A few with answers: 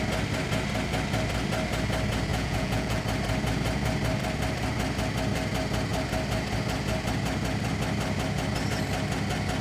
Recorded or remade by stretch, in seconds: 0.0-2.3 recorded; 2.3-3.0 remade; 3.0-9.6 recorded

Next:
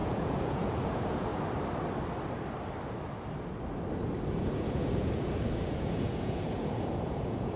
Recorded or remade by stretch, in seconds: 0.0-1.3 remade; 1.3-4.3 recorded; 4.3-7.6 remade